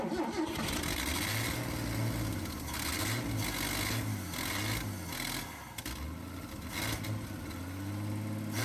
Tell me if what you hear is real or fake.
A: real